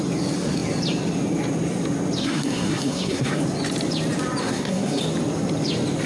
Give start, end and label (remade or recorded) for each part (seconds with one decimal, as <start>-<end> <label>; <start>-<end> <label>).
0.0-2.2 recorded; 2.2-3.4 remade; 3.4-4.4 recorded; 4.4-5.0 remade; 5.0-6.1 recorded